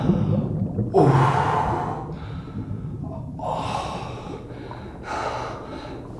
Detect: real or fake real